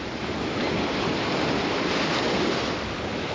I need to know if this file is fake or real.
real